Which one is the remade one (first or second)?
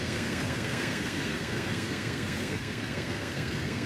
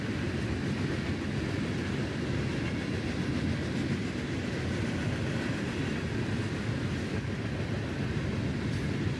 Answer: first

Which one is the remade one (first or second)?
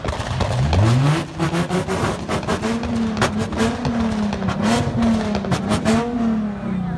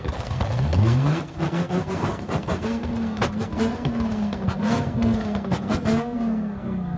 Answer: second